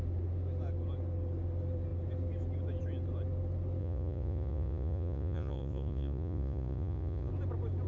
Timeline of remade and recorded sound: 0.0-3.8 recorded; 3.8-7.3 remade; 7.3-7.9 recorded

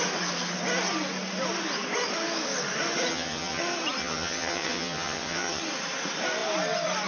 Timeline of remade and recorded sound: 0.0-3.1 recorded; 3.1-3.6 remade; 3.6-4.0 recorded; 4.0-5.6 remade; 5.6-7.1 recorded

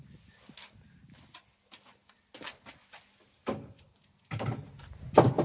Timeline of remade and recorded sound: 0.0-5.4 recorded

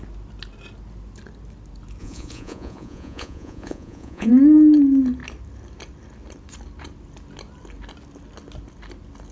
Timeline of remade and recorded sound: 0.0-2.0 recorded; 2.0-4.3 remade; 4.3-9.3 recorded